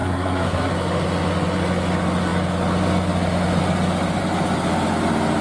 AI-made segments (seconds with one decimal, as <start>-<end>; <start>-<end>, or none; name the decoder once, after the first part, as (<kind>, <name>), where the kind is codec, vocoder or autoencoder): 0.0-0.7 (codec, SNAC)